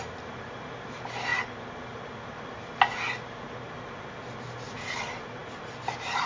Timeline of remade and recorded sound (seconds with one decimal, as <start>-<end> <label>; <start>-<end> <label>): 0.0-6.3 recorded